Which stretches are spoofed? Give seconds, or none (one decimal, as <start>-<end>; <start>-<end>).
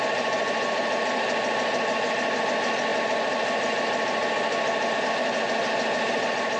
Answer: none